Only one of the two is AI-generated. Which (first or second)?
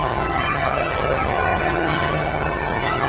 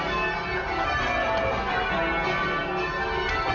first